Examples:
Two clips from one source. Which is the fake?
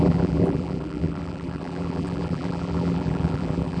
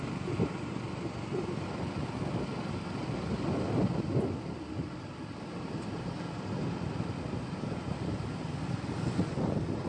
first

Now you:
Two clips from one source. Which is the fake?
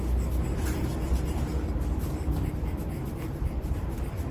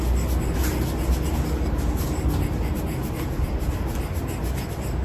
first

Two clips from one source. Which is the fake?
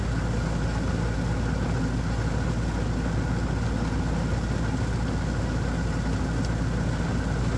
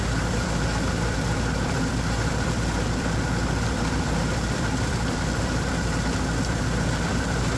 second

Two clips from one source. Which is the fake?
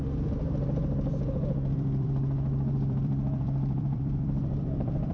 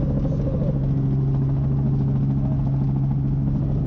first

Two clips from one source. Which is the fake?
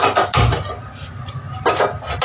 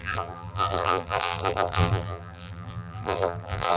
second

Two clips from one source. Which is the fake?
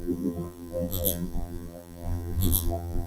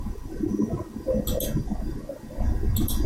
first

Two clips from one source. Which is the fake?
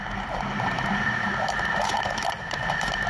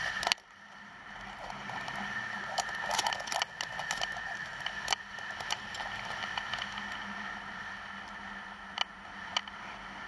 first